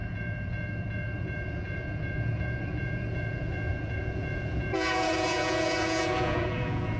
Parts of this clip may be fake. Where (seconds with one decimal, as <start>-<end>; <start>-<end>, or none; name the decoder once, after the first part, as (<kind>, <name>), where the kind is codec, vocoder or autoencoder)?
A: 0.0-7.0 (vocoder, Vocos)